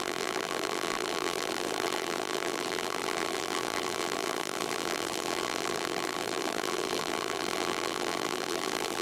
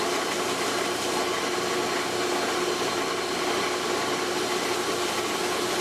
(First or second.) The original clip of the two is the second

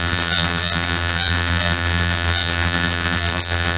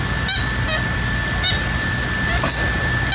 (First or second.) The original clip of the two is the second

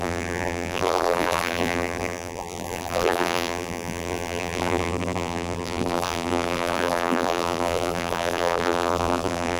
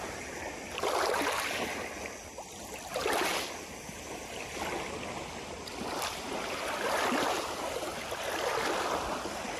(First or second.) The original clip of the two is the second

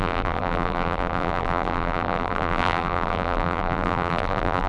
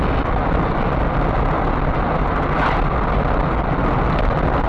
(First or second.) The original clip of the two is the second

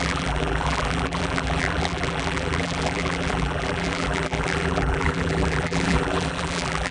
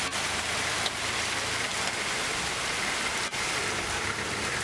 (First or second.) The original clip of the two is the second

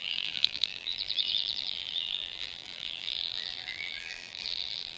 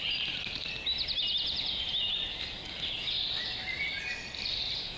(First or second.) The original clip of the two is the second